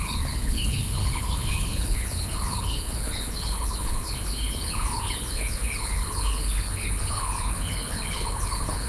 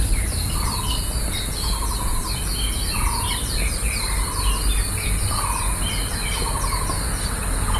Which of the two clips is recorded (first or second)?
second